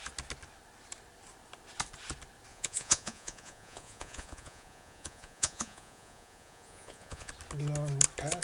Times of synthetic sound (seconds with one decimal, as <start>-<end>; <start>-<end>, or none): 2.5-7.3